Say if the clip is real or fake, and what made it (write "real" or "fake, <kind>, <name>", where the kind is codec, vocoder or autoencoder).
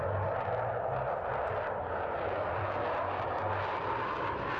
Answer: real